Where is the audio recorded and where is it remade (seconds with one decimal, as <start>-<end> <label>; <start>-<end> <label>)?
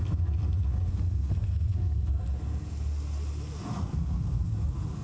0.0-0.9 recorded; 0.9-2.2 remade; 2.2-3.7 recorded; 3.7-4.5 remade; 4.5-5.0 recorded